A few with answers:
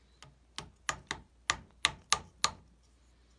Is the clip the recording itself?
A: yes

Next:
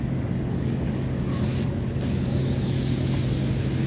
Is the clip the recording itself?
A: no